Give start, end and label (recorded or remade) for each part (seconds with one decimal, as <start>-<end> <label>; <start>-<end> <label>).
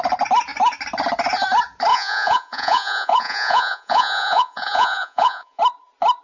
0.0-1.9 recorded; 1.9-5.6 remade; 5.6-6.2 recorded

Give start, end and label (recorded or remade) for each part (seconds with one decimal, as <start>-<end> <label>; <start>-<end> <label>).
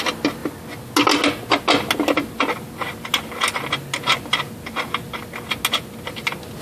0.0-6.6 recorded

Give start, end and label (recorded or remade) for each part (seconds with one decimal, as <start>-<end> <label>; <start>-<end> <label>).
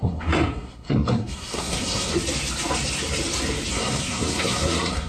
0.0-2.2 remade; 2.2-3.7 recorded; 3.7-5.1 remade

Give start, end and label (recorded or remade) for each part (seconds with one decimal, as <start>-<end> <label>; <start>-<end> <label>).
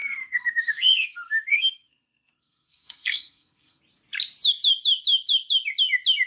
0.0-3.8 remade; 3.8-6.3 recorded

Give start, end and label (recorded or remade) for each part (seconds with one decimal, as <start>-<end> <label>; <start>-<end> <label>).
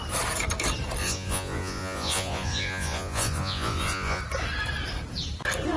0.0-1.0 recorded; 1.0-4.2 remade; 4.2-5.8 recorded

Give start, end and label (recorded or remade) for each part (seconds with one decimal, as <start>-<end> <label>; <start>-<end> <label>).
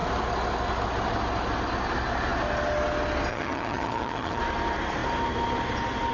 0.0-3.3 recorded; 3.3-4.4 remade; 4.4-6.1 recorded